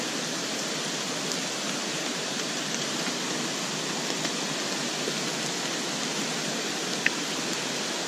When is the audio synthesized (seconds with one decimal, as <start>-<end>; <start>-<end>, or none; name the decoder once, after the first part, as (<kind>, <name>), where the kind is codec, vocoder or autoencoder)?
1.8-3.0 (vocoder, BigVGAN v2)